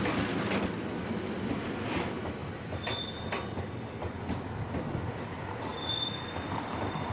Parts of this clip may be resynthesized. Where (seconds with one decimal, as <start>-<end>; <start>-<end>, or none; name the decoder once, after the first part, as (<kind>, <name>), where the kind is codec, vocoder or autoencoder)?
5.7-7.1 (vocoder, BigVGAN v2)